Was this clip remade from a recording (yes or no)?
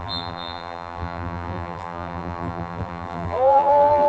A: yes